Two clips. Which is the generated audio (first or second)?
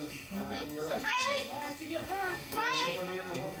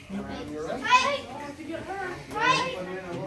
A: first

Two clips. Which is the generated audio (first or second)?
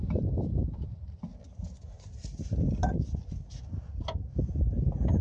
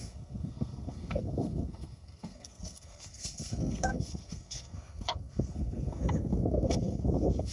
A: second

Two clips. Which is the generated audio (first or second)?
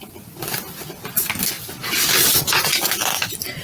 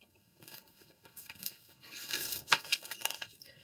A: second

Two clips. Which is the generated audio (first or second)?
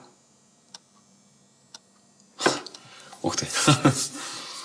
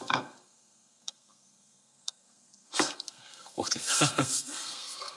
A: second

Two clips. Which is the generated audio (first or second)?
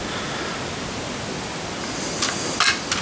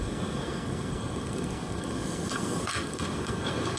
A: second